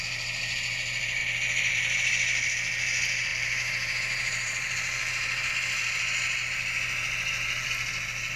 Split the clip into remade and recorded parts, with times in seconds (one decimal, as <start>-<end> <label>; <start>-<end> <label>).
0.0-3.3 recorded; 3.3-5.5 remade; 5.5-8.4 recorded